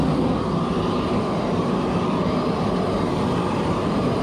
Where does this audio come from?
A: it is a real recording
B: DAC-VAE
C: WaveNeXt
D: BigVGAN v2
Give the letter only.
A